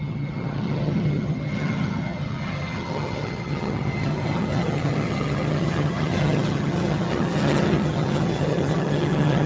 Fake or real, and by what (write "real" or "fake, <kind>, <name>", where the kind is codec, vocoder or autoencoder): fake, vocoder, HiFi-GAN